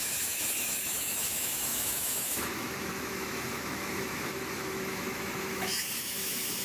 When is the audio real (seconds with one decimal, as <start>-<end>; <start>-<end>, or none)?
none